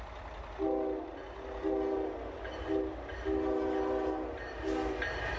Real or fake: real